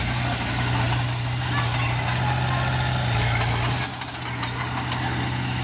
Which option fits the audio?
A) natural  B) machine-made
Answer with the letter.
A